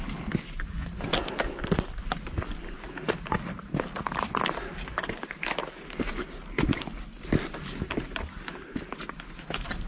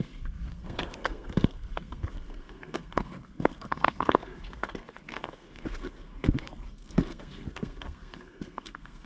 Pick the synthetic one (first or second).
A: second